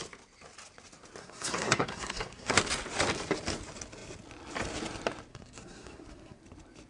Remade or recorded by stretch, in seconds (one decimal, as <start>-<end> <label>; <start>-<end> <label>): 0.0-1.2 recorded; 1.2-2.6 remade; 2.6-5.3 recorded; 5.3-6.4 remade; 6.4-6.9 recorded